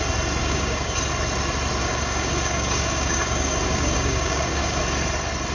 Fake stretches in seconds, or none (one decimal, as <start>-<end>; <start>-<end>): 0.4-1.0; 1.8-4.8